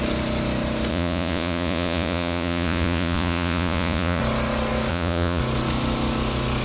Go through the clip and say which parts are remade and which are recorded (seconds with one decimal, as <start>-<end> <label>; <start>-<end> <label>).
0.0-0.9 recorded; 0.9-4.2 remade; 4.2-4.9 recorded; 4.9-5.4 remade; 5.4-6.6 recorded